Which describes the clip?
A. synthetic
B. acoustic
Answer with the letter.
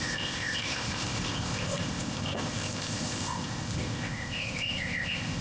A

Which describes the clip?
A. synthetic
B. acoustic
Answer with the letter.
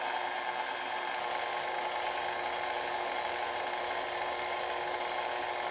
B